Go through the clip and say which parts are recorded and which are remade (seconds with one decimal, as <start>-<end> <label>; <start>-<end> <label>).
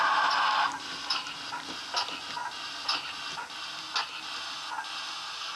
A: 0.0-5.6 recorded